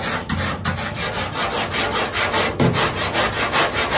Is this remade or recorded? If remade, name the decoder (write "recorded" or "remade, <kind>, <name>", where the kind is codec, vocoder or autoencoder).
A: recorded